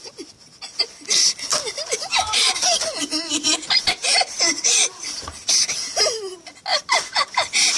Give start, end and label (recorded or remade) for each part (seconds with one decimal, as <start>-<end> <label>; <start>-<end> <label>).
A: 0.0-1.5 recorded; 1.5-6.2 remade; 6.2-6.7 recorded; 6.7-7.3 remade; 7.3-7.8 recorded